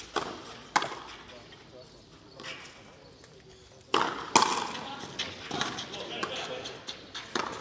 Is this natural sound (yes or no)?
yes